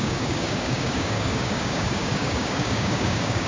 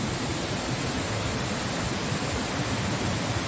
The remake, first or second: first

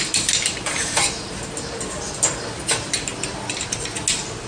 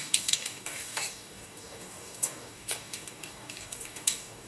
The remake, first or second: second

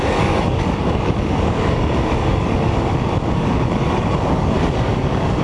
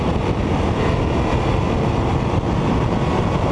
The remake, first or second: first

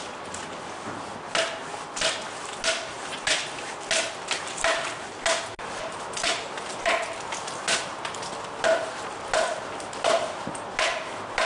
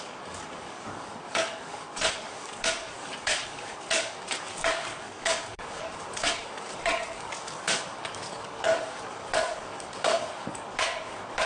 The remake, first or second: second